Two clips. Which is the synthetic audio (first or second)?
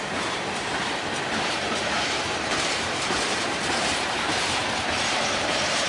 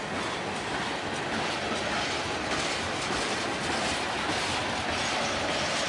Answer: first